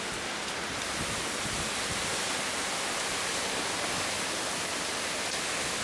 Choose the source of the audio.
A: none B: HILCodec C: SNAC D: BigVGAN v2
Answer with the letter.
A